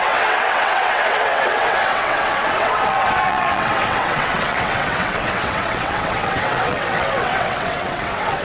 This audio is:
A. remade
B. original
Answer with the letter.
A